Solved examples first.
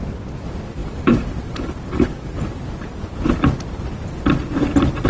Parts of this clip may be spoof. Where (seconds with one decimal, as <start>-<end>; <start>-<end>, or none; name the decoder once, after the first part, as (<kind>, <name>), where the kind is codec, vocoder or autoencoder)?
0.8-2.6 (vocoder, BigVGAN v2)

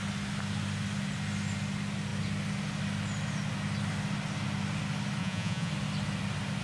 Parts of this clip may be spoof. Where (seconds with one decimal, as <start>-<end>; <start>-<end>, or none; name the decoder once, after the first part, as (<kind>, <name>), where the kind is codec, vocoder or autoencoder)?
5.2-5.7 (vocoder, Vocos)

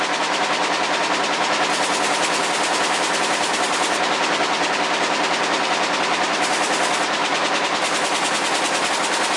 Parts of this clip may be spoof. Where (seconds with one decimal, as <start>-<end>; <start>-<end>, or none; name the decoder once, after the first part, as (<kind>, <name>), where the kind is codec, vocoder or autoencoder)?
none